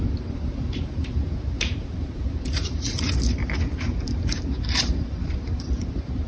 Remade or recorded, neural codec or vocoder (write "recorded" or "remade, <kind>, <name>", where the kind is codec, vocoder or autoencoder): remade, vocoder, BigVGAN v2